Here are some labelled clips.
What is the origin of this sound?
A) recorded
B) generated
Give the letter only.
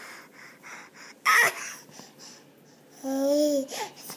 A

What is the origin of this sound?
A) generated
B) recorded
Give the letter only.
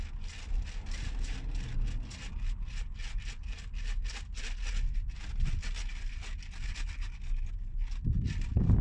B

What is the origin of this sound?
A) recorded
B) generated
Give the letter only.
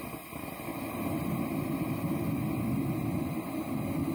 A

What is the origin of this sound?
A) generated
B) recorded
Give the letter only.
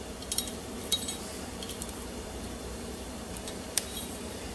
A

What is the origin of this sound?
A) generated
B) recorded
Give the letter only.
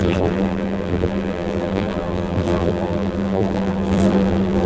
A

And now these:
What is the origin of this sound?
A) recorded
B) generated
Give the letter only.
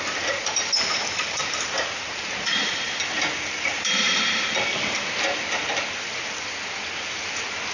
B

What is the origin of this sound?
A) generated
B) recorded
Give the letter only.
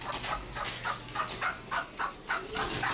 B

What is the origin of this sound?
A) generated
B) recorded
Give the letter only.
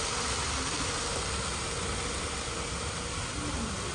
B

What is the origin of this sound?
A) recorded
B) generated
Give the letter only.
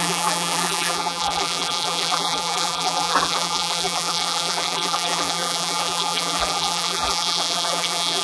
B